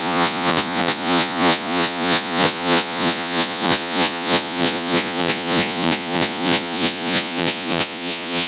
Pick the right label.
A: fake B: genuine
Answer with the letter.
A